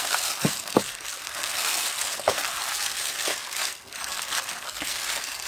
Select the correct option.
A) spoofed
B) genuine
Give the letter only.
A